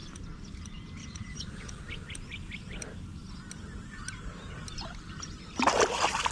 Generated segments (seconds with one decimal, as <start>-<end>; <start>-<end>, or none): 1.0-1.8